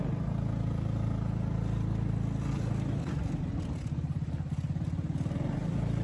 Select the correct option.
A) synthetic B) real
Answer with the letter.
B